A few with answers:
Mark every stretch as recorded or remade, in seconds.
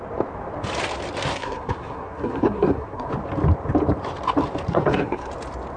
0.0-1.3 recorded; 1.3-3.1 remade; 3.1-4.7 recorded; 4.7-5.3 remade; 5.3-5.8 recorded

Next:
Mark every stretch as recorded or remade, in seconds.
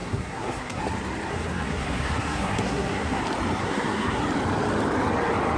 0.0-0.8 remade; 0.8-1.3 recorded; 1.3-3.2 remade; 3.2-3.6 recorded; 3.6-4.2 remade; 4.2-5.6 recorded